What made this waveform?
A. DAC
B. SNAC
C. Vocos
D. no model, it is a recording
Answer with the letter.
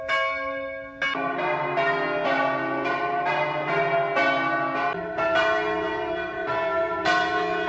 D